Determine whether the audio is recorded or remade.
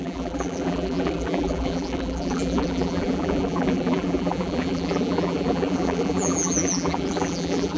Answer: remade